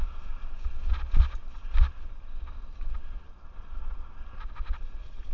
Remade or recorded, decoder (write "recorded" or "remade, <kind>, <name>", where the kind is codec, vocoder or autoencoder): recorded